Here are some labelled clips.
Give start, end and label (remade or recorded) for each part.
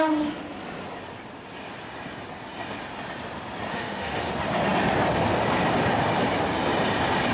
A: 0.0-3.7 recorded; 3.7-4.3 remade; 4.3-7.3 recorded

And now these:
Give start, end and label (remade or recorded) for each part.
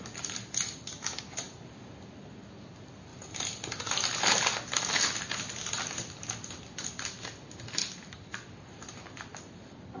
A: 0.0-10.0 recorded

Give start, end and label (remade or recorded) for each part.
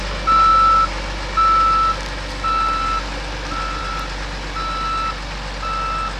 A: 0.0-6.2 recorded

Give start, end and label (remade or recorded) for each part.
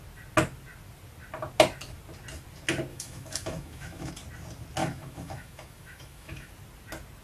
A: 0.0-2.9 recorded; 2.9-4.1 remade; 4.1-4.8 recorded; 4.8-6.5 remade; 6.5-7.2 recorded